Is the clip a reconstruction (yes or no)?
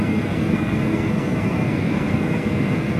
yes